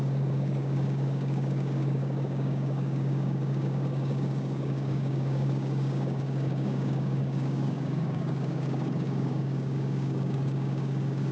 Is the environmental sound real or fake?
fake